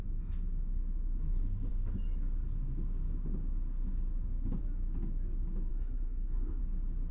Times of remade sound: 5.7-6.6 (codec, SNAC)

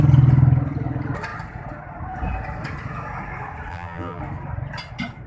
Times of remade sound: 3.7-4.2 (vocoder, BigVGAN v2)